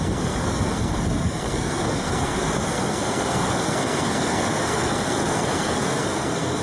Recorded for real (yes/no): no